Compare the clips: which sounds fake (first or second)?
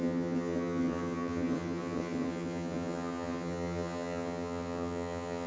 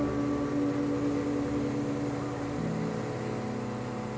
first